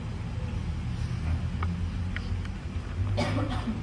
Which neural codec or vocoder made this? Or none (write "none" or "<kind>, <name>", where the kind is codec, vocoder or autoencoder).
none